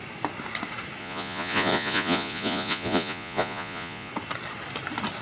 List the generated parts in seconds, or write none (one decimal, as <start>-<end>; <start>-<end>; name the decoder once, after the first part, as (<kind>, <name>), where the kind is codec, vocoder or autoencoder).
1.0-4.1 (vocoder, Vocos)